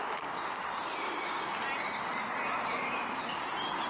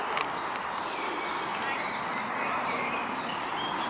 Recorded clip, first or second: first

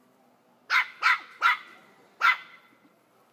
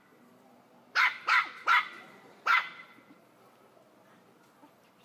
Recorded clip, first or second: first